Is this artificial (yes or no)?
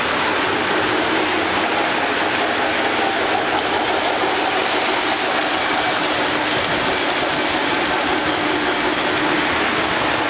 no